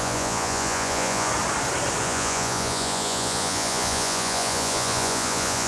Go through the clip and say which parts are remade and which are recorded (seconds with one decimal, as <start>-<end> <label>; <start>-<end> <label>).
0.0-1.3 remade; 1.3-2.0 recorded; 2.0-5.7 remade